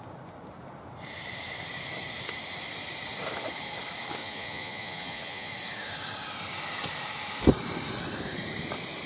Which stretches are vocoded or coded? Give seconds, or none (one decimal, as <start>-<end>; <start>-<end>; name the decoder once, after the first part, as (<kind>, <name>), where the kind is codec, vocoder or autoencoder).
4.2-5.5 (vocoder, Vocos)

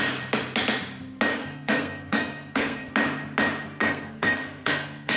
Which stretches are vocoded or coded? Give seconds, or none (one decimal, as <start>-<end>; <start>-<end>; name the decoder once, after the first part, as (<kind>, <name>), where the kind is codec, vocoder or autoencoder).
1.3-2.9 (codec, SNAC); 3.8-5.2